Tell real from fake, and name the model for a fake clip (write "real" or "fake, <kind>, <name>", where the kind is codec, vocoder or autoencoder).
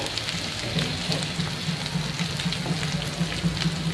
real